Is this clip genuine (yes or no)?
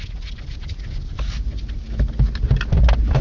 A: yes